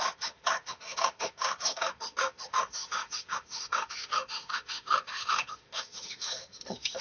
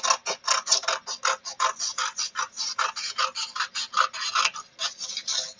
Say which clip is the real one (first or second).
second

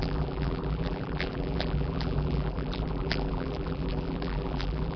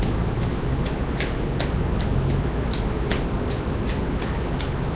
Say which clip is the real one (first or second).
second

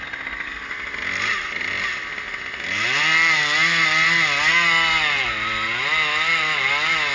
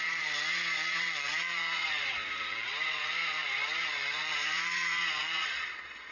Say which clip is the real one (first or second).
first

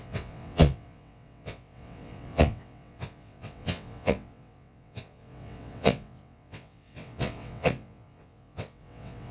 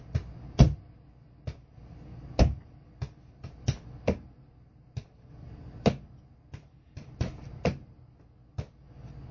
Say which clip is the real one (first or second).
second